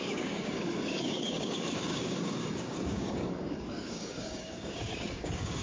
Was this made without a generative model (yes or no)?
no